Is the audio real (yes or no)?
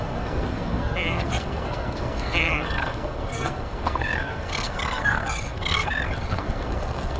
no